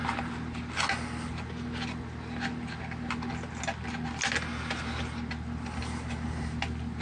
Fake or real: real